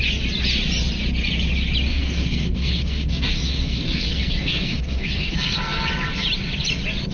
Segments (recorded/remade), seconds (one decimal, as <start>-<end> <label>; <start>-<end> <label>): 0.0-1.9 recorded; 1.9-5.9 remade; 5.9-7.1 recorded